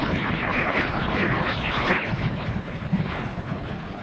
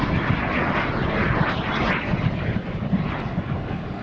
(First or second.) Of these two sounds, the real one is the second